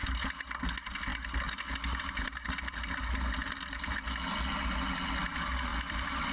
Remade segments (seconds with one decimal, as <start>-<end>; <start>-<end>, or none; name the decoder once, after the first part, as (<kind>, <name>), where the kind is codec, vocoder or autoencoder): 5.7-6.3 (vocoder, BigVGAN v2)